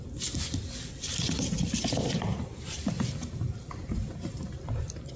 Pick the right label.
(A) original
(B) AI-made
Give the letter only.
B